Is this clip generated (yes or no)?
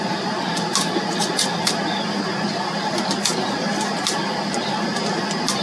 no